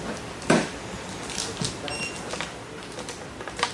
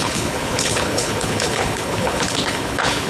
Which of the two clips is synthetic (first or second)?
second